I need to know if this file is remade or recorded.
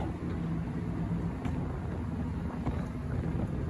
recorded